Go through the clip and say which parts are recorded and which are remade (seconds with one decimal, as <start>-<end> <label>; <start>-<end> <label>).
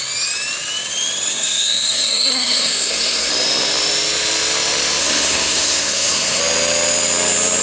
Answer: 0.0-1.3 recorded; 1.3-3.3 remade; 3.3-5.0 recorded; 5.0-6.4 remade; 6.4-7.6 recorded